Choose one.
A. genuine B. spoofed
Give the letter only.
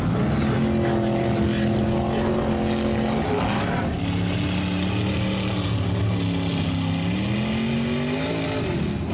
A